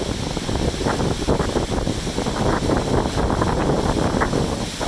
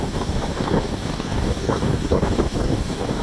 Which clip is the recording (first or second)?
first